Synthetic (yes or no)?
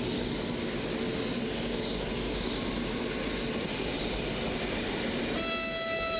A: no